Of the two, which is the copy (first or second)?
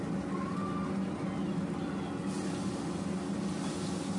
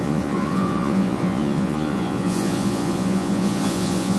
second